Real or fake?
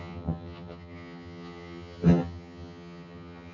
fake